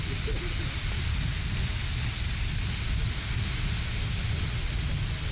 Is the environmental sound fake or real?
real